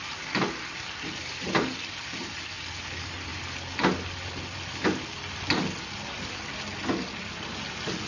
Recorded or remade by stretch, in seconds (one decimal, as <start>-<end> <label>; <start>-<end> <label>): 0.0-8.1 recorded